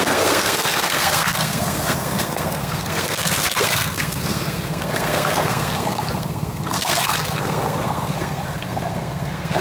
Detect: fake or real fake